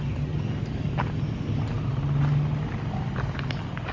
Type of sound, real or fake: real